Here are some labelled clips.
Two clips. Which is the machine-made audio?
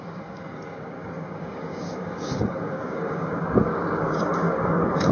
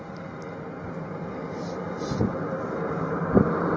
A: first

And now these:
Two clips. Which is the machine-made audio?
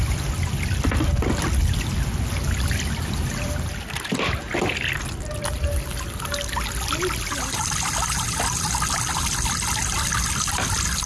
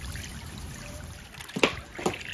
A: second